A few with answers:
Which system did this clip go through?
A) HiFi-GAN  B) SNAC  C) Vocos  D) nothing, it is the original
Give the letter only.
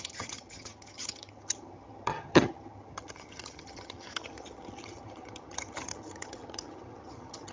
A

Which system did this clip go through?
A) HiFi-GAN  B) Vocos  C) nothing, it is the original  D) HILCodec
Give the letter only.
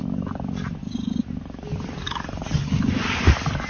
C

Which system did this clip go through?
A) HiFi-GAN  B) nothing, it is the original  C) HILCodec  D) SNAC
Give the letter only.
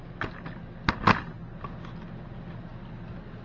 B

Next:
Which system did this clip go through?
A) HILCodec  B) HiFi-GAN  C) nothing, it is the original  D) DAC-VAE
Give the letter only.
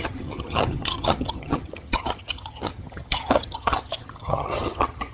B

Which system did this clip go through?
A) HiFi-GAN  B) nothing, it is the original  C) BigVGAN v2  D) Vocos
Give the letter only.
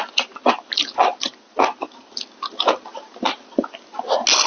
B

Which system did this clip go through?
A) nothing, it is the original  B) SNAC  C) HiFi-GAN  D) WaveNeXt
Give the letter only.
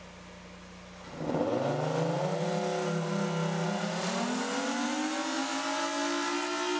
A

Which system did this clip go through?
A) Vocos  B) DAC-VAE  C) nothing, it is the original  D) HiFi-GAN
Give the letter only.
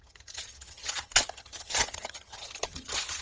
D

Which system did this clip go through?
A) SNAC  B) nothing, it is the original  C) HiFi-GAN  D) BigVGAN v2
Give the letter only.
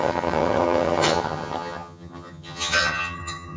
C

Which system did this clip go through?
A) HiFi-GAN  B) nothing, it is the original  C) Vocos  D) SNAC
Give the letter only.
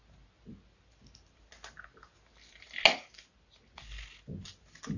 B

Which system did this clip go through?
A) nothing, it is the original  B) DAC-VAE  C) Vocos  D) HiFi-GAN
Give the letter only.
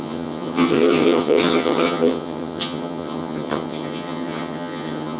D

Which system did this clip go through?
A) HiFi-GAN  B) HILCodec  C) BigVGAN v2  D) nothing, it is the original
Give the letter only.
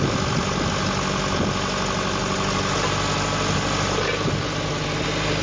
D